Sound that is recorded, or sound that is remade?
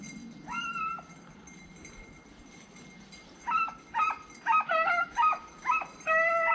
recorded